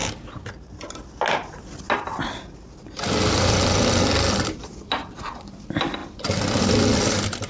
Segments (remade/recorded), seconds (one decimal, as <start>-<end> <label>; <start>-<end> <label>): 0.0-4.5 recorded; 4.5-7.5 remade